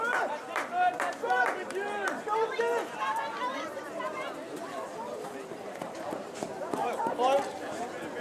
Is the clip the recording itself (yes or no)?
no